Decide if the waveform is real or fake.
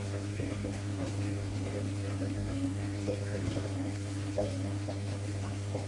fake